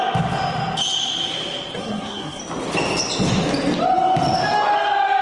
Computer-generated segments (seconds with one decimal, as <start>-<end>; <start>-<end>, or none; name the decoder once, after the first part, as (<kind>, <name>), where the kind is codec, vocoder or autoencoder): 1.8-2.4 (codec, SNAC)